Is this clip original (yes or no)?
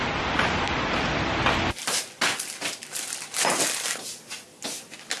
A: yes